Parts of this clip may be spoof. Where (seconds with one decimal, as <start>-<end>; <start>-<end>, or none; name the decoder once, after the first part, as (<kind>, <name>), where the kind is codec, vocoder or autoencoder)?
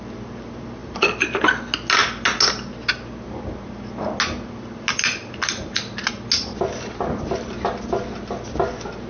0.8-1.6 (vocoder, BigVGAN v2)